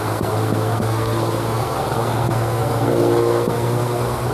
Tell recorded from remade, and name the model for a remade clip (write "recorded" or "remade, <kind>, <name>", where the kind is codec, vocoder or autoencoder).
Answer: remade, codec, SNAC